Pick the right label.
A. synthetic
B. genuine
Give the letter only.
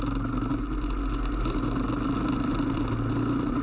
B